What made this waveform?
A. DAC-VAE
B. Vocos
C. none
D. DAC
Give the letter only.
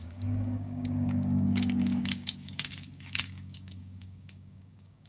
D